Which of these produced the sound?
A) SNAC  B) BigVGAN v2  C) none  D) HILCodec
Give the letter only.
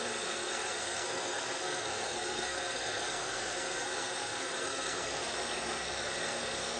A